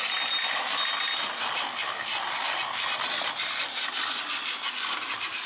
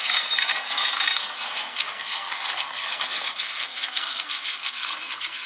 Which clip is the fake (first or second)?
second